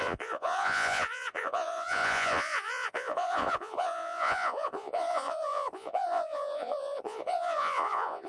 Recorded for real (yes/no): no